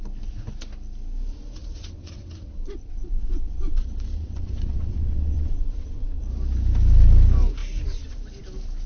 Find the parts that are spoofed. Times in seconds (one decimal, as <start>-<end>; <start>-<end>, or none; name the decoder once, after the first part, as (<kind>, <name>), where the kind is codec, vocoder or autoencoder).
1.6-6.2 (vocoder, WaveNeXt)